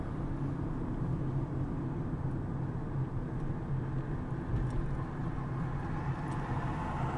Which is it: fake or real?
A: real